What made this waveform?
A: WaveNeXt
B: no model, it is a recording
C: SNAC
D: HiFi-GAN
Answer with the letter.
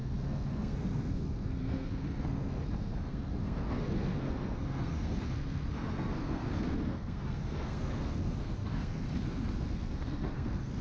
C